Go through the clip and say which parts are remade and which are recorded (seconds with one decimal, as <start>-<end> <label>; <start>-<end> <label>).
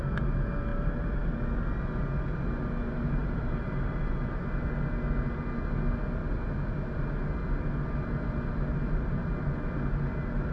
0.0-0.7 recorded; 0.7-1.4 remade; 1.4-3.2 recorded; 3.2-4.4 remade; 4.4-8.7 recorded; 8.7-9.3 remade; 9.3-10.5 recorded